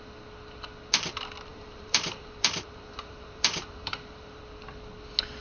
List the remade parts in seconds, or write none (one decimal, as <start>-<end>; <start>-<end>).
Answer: 1.5-4.4